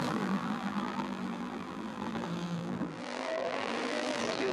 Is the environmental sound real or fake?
fake